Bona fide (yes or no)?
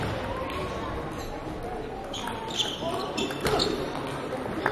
yes